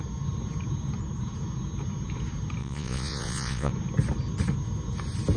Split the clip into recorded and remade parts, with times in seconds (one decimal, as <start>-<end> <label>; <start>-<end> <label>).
0.0-2.6 recorded; 2.6-3.7 remade; 3.7-5.4 recorded